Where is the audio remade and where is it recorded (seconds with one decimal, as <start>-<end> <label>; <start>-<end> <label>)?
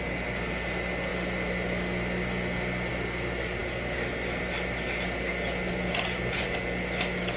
0.0-7.4 recorded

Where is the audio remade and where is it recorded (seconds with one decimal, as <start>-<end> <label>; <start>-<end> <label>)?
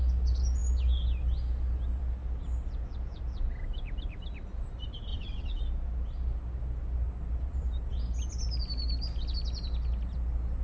0.0-5.1 recorded; 5.1-5.6 remade; 5.6-10.6 recorded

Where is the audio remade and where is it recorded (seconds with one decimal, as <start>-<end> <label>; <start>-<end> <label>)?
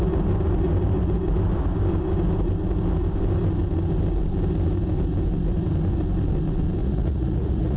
0.0-6.8 recorded; 6.8-7.8 remade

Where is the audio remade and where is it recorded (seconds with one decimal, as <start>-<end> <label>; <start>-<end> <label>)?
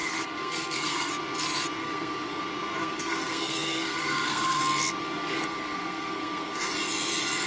0.0-1.1 remade; 1.1-1.8 recorded; 1.8-2.4 remade; 2.4-2.8 recorded; 2.8-4.6 remade; 4.6-5.0 recorded; 5.0-6.7 remade; 6.7-7.5 recorded